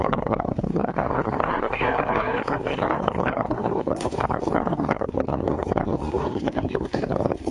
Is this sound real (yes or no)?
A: no